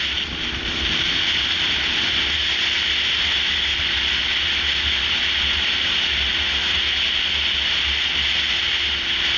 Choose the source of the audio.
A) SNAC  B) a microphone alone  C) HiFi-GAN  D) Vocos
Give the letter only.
B